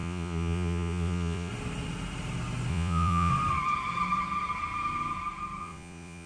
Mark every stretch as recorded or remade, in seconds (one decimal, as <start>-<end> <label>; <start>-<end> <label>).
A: 0.0-1.5 remade; 1.5-2.7 recorded; 2.7-3.3 remade; 3.3-5.6 recorded; 5.6-6.3 remade